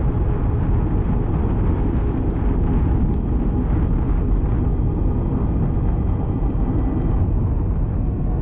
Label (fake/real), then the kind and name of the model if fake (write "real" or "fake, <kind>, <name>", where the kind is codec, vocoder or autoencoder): real